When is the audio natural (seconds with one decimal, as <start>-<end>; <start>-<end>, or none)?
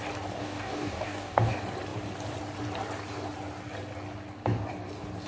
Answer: 0.0-0.4; 1.5-5.3